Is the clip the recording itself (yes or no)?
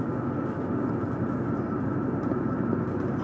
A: yes